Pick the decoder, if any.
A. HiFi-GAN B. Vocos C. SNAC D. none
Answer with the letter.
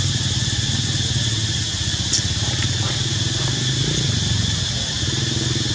D